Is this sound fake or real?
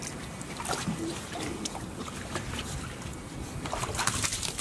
real